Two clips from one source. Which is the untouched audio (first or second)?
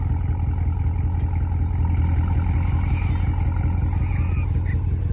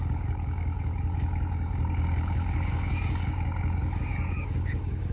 first